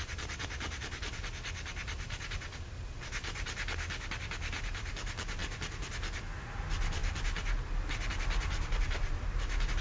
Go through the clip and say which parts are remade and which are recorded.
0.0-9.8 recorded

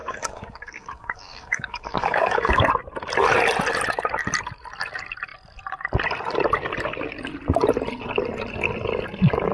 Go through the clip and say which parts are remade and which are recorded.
0.0-2.7 remade; 2.7-9.5 recorded

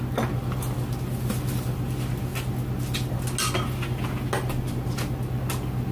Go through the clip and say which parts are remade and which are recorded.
0.0-5.9 recorded

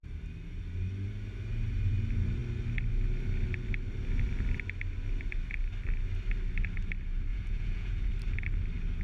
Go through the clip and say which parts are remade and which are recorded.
0.0-7.3 recorded; 7.3-8.1 remade; 8.1-9.0 recorded

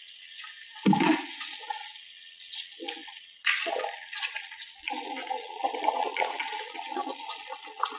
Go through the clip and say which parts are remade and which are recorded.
0.0-0.4 remade; 0.4-1.0 recorded; 1.0-8.0 remade

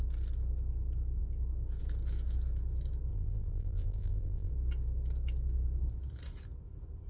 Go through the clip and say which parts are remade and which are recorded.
0.0-3.1 recorded; 3.1-4.5 remade; 4.5-7.1 recorded

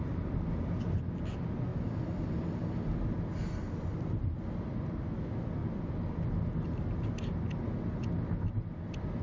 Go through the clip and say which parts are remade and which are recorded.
0.0-9.2 recorded

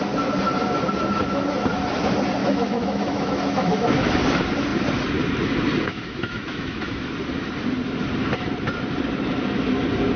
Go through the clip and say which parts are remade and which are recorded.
0.0-2.4 recorded; 2.4-4.1 remade; 4.1-5.9 recorded; 5.9-7.1 remade; 7.1-10.2 recorded